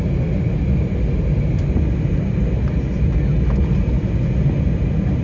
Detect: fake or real real